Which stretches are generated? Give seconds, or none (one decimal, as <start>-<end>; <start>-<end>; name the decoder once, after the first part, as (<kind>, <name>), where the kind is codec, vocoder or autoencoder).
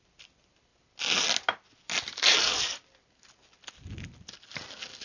none